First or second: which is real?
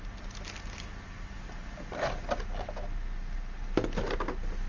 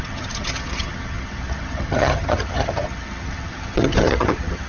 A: first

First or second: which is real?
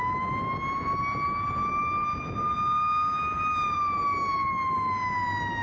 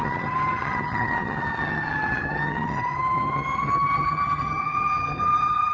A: first